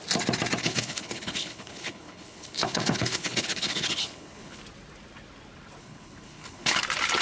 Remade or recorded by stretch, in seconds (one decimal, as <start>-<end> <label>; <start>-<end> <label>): 0.0-0.6 recorded; 0.6-4.6 remade; 4.6-5.8 recorded; 5.8-6.8 remade; 6.8-7.2 recorded